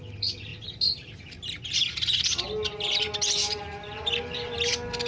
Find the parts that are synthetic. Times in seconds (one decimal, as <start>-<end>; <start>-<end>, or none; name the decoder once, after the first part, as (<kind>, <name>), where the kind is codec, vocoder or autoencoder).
none